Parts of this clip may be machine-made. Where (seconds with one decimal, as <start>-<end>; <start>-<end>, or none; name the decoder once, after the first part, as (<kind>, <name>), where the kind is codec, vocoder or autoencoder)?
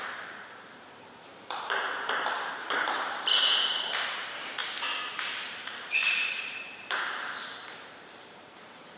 0.0-9.0 (vocoder, BigVGAN v2)